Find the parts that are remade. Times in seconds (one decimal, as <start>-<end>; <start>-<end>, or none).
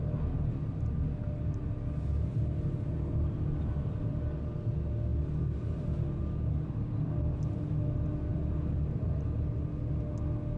5.1-6.2; 8.3-9.7